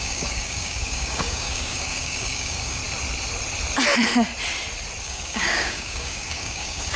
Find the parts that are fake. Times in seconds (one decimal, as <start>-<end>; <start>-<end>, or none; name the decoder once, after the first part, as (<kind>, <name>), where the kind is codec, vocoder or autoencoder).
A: 0.0-2.8 (codec, DAC); 5.0-7.0